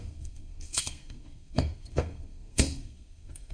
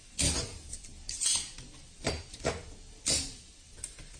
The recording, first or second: second